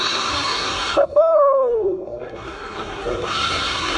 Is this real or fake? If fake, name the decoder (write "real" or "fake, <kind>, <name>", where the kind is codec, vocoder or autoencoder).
fake, codec, SNAC